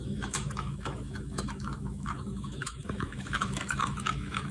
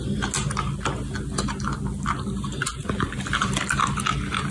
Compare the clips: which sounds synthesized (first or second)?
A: first